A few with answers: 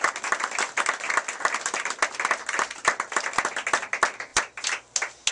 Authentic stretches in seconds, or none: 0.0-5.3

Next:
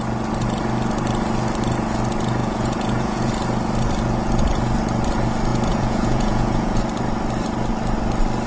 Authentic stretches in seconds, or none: 0.0-2.4; 3.3-5.5; 6.8-8.5

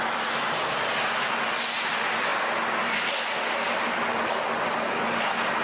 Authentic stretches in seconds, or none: 0.0-5.6

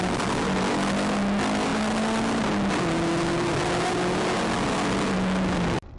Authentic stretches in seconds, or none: 0.0-6.0